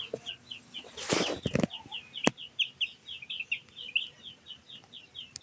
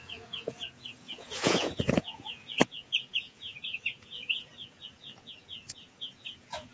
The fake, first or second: second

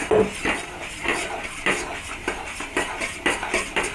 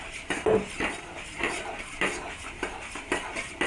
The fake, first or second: second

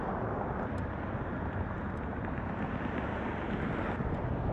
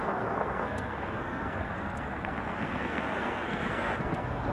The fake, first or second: second